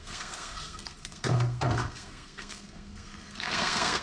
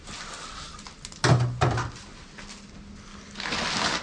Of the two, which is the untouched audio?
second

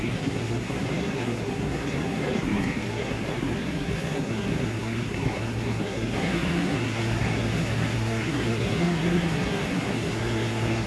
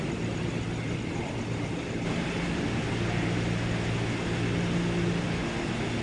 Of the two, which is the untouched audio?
second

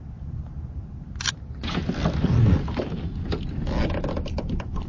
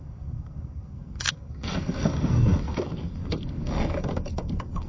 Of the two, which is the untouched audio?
first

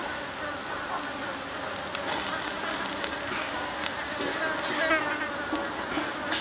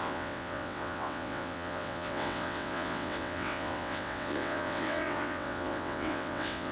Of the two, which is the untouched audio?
first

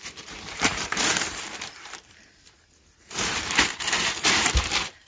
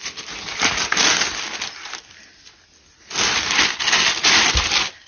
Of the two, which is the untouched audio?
second